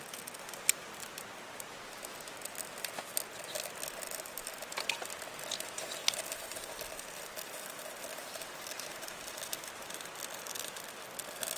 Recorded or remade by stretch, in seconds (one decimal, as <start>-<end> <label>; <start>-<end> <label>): 0.0-11.6 recorded